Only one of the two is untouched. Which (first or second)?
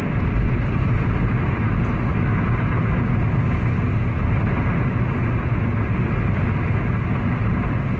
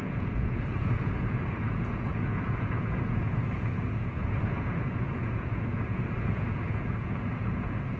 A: first